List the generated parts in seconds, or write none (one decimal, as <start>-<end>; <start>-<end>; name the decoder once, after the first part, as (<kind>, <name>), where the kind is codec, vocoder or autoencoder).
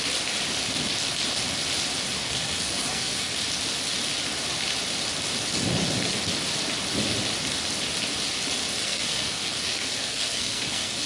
2.2-3.3 (codec, SNAC); 8.8-11.1